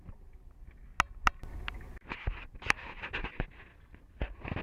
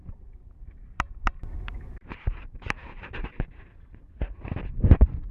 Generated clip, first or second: second